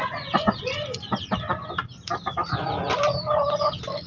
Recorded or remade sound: recorded